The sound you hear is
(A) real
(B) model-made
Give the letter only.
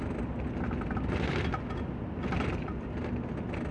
A